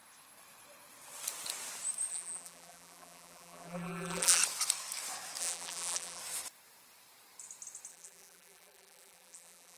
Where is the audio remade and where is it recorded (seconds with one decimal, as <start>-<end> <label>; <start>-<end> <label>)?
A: 0.0-2.1 recorded; 2.1-4.4 remade; 4.4-5.4 recorded; 5.4-6.2 remade; 6.2-7.9 recorded; 7.9-9.8 remade